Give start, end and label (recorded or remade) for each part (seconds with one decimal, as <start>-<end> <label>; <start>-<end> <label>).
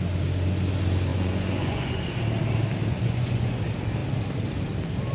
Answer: 0.0-1.1 recorded; 1.1-2.0 remade; 2.0-2.9 recorded; 2.9-3.6 remade; 3.6-5.1 recorded